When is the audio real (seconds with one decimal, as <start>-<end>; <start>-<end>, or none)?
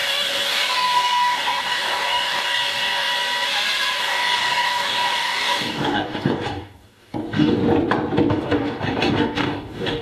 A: 3.1-4.0; 7.6-8.3